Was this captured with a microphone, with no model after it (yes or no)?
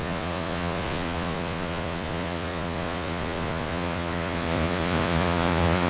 no